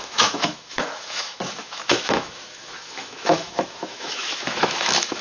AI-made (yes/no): yes